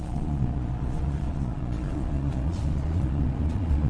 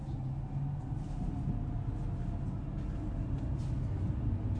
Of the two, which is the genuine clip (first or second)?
second